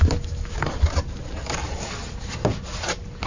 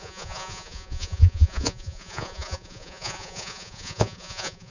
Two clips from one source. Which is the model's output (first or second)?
second